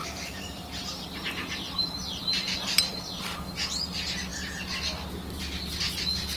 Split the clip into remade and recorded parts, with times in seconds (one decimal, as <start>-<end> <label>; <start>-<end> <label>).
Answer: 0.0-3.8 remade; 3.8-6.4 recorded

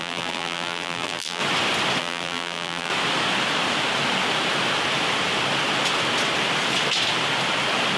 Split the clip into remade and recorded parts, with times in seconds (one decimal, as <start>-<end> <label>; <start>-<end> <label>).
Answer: 0.0-1.4 remade; 1.4-2.0 recorded; 2.0-2.9 remade; 2.9-8.0 recorded

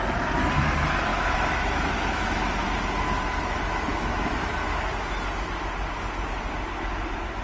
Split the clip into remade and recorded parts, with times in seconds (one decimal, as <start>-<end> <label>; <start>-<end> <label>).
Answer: 0.0-1.1 recorded; 1.1-2.4 remade; 2.4-3.9 recorded; 3.9-4.5 remade; 4.5-7.4 recorded

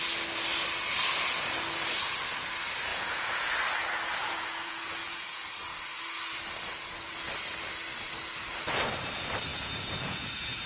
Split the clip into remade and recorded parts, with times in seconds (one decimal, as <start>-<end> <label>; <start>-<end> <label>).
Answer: 0.0-2.9 recorded; 2.9-3.5 remade; 3.5-4.2 recorded; 4.2-5.5 remade; 5.5-9.5 recorded; 9.5-10.7 remade

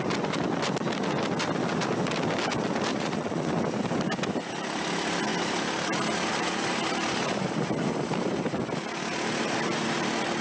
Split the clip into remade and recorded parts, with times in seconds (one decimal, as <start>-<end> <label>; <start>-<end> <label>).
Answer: 0.0-2.9 recorded; 2.9-3.5 remade; 3.5-10.4 recorded

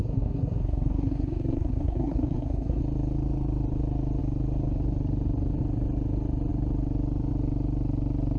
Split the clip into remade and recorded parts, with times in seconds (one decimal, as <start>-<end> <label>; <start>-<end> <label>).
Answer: 0.0-2.8 remade; 2.8-8.4 recorded